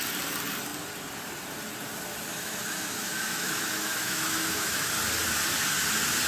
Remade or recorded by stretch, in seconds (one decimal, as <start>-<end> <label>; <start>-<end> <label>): 0.0-2.3 recorded; 2.3-4.9 remade; 4.9-6.3 recorded